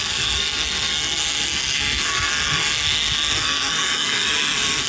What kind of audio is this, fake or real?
fake